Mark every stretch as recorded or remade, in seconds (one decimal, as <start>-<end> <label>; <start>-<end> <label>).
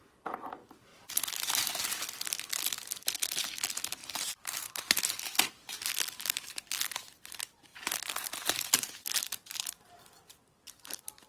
0.0-0.9 recorded; 0.9-1.5 remade; 1.5-4.0 recorded; 4.0-4.8 remade; 4.8-11.3 recorded